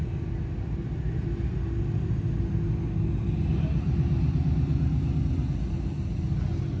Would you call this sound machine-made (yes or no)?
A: no